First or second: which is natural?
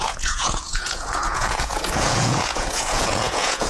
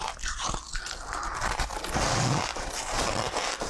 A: second